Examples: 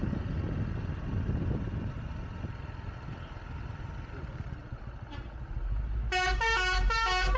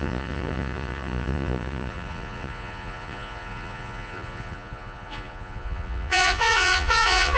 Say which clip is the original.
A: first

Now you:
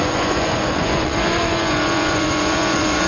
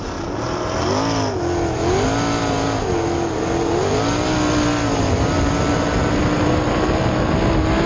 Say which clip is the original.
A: second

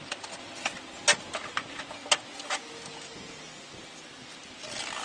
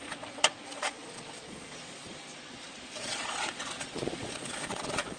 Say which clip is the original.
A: first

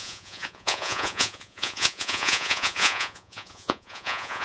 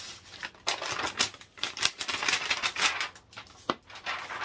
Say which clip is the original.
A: second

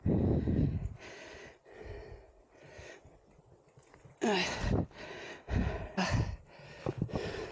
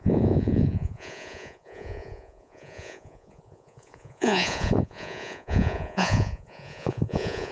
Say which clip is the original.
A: first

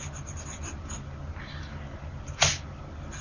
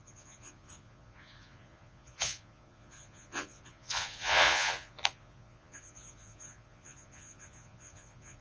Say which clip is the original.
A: first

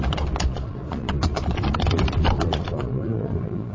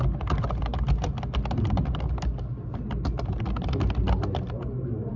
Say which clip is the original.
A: second